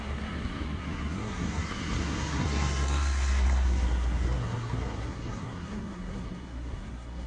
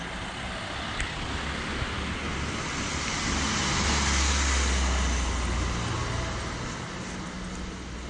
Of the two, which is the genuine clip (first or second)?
second